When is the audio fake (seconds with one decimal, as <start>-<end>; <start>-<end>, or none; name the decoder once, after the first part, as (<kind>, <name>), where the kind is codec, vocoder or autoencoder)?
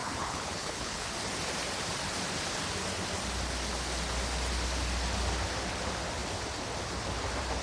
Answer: 0.0-1.1 (codec, HILCodec)